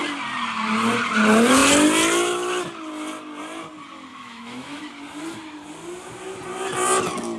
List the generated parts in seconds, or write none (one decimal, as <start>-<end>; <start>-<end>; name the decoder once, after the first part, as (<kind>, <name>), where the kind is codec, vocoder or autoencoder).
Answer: 4.1-4.8 (autoencoder, DAC-VAE)